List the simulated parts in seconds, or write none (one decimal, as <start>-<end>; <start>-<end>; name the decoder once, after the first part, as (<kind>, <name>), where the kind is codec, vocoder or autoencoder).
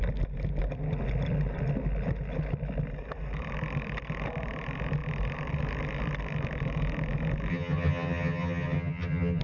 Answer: 7.5-9.4 (vocoder, HiFi-GAN)